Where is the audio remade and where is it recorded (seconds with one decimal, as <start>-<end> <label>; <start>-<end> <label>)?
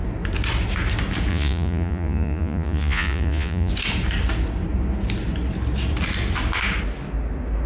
0.0-1.3 recorded; 1.3-3.7 remade; 3.7-7.7 recorded